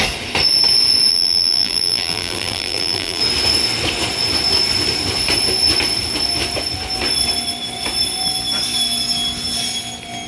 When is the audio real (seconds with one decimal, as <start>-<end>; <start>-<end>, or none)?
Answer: 0.0-1.1; 3.2-10.3